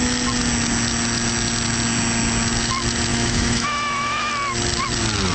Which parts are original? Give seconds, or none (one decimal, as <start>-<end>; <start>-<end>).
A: 0.0-3.1; 4.3-5.3